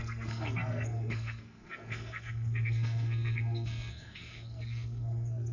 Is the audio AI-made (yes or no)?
yes